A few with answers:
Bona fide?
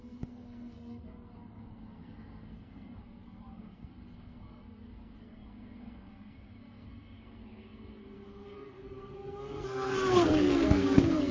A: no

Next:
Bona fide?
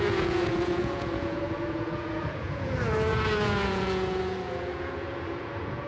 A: no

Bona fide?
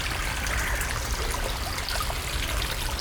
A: yes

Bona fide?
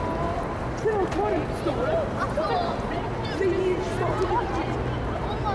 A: yes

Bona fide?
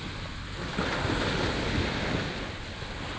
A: yes